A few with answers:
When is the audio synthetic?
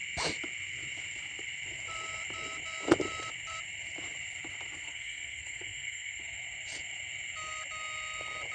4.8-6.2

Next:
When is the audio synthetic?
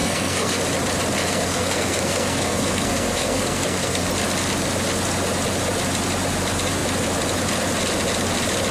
0.0-0.6; 1.2-4.1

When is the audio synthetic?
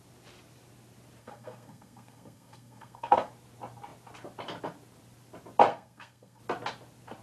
1.2-3.3; 5.7-6.4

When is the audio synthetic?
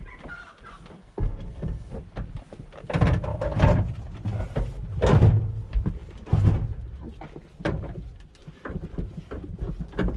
1.0-1.9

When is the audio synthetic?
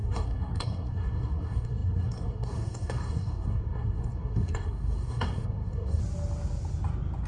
0.0-6.0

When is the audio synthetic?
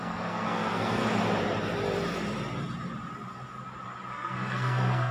0.0-1.0; 4.1-5.1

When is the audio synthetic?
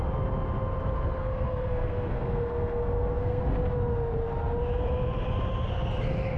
1.2-3.4